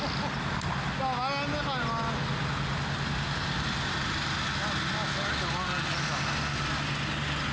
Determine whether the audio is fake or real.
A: real